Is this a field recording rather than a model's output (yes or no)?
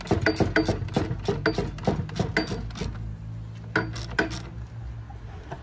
yes